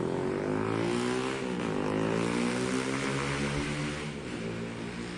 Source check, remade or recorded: recorded